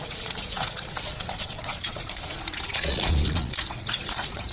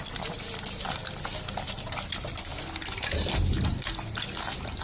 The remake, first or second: first